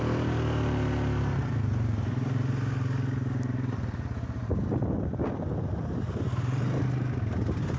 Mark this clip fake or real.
real